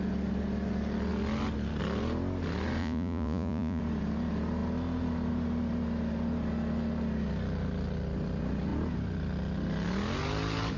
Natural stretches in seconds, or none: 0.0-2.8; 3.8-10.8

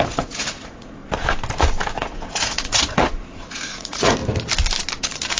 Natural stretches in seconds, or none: 1.0-1.9; 4.2-5.0

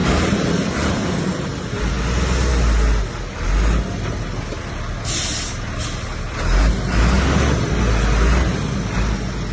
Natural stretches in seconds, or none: 1.9-9.5

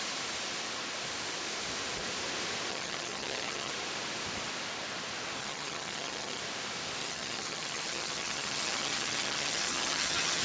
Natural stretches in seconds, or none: 0.0-2.7; 3.7-5.4; 6.4-7.0

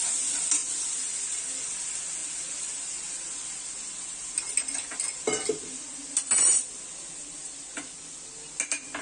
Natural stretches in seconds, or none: 0.0-9.0

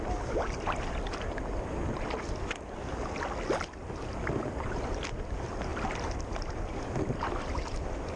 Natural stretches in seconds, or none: 0.0-8.2